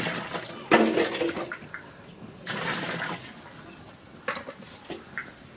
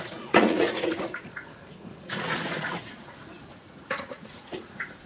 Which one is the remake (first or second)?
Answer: second